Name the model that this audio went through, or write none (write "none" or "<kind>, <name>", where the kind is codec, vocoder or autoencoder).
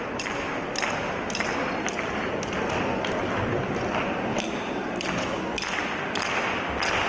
none